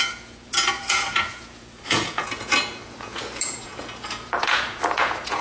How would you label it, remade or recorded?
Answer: remade